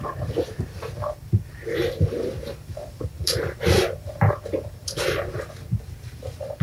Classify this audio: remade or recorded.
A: remade